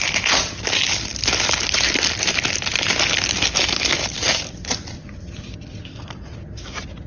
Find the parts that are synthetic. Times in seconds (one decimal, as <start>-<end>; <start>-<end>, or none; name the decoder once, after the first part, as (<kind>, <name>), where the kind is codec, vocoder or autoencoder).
none